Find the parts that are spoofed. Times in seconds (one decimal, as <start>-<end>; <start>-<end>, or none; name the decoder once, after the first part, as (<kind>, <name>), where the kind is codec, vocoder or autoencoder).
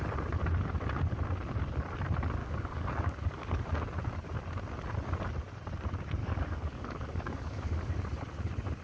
2.4-3.6 (codec, DAC); 6.2-7.9